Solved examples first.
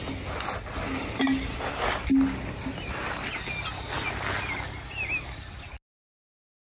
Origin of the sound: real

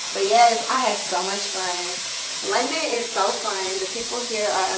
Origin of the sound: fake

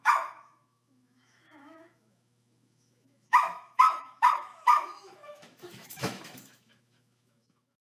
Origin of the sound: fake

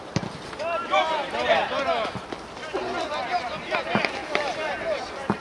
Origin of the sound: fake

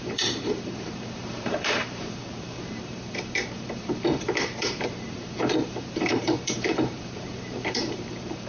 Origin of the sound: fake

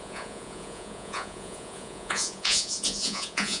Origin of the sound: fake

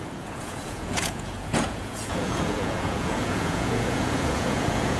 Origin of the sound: fake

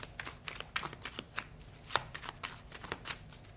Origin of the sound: real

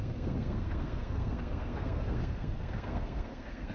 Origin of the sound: fake